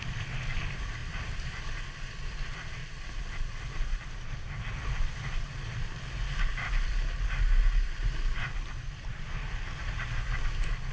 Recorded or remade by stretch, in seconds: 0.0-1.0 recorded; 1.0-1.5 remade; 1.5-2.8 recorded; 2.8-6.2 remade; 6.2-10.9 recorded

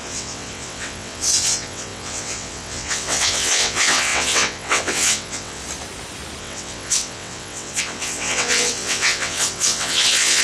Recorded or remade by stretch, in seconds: 0.0-5.6 remade; 5.6-6.4 recorded; 6.4-10.4 remade

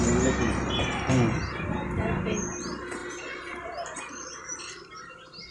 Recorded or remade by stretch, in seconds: 0.0-5.5 recorded

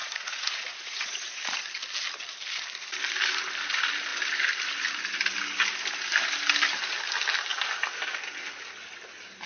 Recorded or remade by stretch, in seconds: 0.0-1.4 remade; 1.4-9.5 recorded

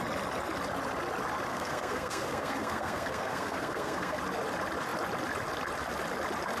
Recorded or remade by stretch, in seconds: 0.0-1.5 recorded; 1.5-4.2 remade; 4.2-6.6 recorded